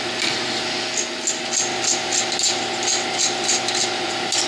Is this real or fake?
real